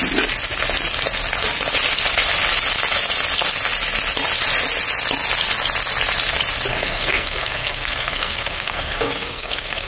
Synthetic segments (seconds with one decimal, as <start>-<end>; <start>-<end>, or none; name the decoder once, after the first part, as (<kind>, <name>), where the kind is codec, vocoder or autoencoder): 6.7-9.9 (codec, SNAC)